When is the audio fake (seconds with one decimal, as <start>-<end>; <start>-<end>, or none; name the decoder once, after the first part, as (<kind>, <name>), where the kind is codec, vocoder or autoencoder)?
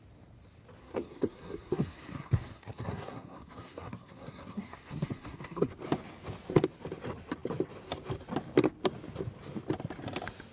0.8-5.7 (codec, SNAC)